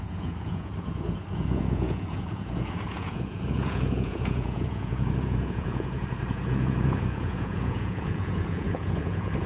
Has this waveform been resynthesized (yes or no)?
yes